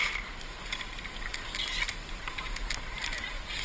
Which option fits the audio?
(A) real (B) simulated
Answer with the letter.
A